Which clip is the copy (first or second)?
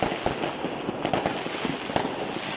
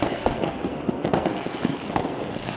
second